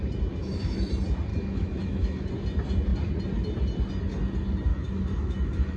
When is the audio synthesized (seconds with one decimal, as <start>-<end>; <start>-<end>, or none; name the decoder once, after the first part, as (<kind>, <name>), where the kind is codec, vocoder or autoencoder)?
0.4-0.9 (autoencoder, DAC-VAE); 1.3-2.3; 4.7-5.8